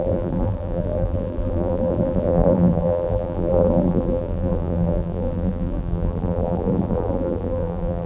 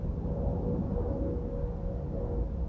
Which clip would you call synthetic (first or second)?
first